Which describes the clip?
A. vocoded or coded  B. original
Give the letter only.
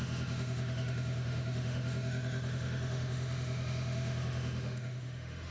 A